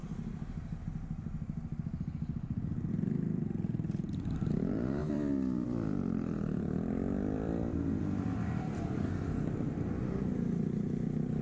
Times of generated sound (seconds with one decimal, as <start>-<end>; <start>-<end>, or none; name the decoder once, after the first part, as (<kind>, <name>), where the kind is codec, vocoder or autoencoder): 5.0-9.1 (vocoder, BigVGAN v2)